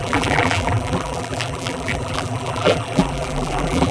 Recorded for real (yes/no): no